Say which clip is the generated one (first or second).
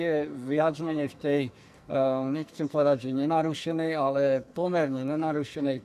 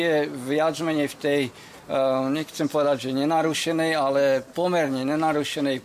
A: first